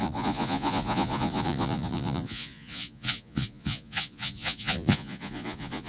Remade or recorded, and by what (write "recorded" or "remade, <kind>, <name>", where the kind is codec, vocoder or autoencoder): remade, vocoder, Vocos